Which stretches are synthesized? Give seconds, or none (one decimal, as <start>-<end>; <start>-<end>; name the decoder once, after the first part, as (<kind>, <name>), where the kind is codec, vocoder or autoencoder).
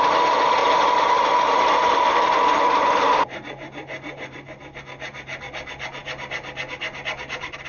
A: 0.6-4.8 (vocoder, BigVGAN v2)